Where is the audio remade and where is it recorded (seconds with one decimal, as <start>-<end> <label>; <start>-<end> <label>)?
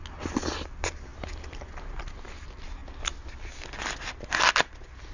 0.0-5.1 recorded